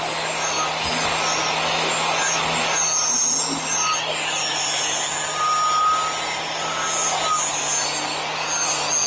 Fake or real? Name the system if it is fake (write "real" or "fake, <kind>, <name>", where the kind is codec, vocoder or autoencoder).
real